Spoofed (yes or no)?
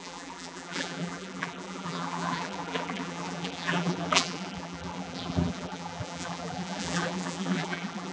yes